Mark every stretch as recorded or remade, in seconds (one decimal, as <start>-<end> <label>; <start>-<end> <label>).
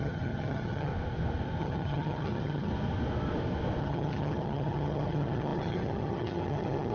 0.0-0.9 remade; 0.9-1.6 recorded; 1.6-2.7 remade; 2.7-3.8 recorded; 3.8-6.9 remade